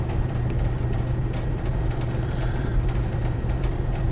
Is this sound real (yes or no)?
no